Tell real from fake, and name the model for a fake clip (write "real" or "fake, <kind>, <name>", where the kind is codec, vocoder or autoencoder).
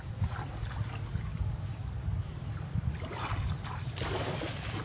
real